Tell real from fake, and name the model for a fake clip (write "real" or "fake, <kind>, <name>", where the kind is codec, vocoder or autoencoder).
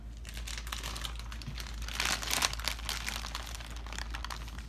real